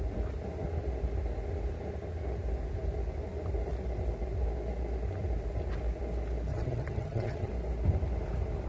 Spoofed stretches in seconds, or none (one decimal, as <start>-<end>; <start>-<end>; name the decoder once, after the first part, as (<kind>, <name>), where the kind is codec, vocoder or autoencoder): 6.5-7.5 (vocoder, HiFi-GAN)

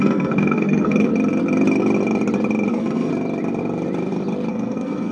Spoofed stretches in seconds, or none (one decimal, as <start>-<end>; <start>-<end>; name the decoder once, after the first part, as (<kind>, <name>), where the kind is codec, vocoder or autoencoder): 0.0-1.1 (codec, SNAC); 2.7-3.1; 4.5-5.1